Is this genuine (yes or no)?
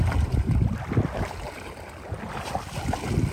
yes